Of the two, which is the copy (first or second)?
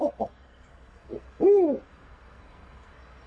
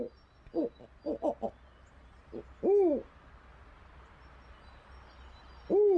first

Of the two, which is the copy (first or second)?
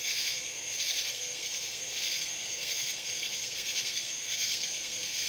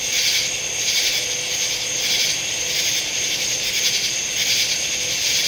first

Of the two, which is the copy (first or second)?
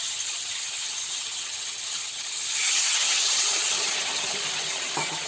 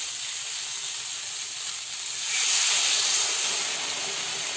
first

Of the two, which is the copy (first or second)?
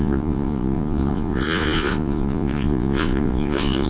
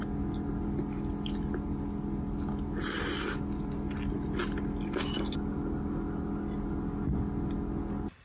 first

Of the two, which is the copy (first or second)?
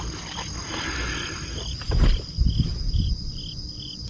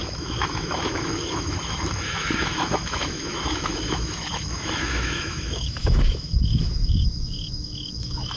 second